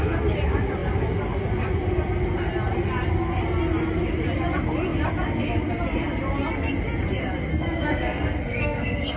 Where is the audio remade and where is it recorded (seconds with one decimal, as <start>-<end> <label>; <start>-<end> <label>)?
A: 0.0-7.5 recorded; 7.5-9.2 remade